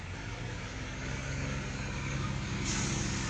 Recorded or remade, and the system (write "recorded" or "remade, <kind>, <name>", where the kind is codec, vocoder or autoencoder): remade, codec, DAC